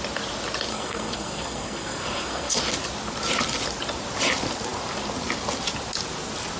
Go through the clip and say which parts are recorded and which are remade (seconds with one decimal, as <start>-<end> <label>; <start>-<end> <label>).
0.0-0.7 recorded; 0.7-2.6 remade; 2.6-6.6 recorded